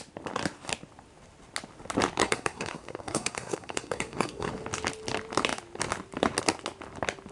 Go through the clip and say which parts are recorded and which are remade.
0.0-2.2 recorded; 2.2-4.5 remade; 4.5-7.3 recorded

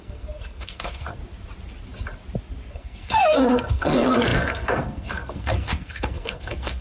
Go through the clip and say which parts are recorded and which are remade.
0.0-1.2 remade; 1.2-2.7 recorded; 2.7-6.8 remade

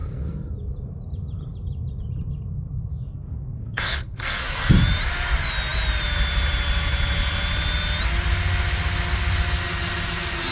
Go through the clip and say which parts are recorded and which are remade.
0.0-0.5 remade; 0.5-3.1 recorded; 3.1-4.7 remade; 4.7-10.5 recorded

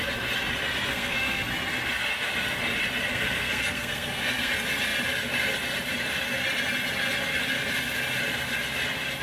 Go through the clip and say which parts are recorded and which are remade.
0.0-0.9 recorded; 0.9-1.5 remade; 1.5-3.1 recorded; 3.1-4.5 remade; 4.5-9.2 recorded